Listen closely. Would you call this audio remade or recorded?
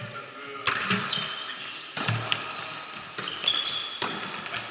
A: recorded